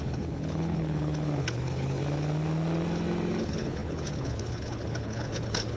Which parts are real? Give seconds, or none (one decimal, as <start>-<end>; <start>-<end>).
2.0-3.4